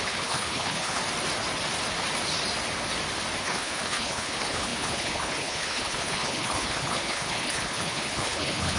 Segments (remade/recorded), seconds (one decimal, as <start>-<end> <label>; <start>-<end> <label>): 0.0-1.0 remade; 1.0-3.4 recorded; 3.4-8.8 remade